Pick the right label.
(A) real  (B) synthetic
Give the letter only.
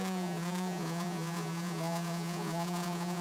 B